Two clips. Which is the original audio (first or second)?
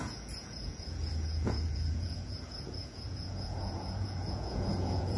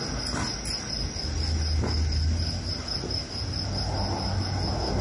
second